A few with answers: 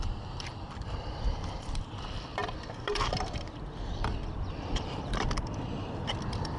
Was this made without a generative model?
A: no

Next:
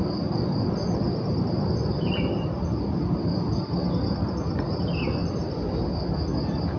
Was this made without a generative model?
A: yes